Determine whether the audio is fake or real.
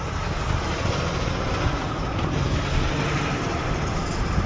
real